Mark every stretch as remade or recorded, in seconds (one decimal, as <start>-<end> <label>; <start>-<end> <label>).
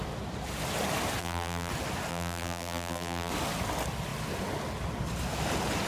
0.0-1.2 recorded; 1.2-1.7 remade; 1.7-2.1 recorded; 2.1-3.3 remade; 3.3-5.9 recorded